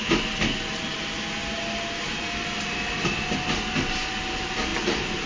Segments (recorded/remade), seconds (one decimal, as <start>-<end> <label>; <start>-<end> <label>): 0.0-5.3 recorded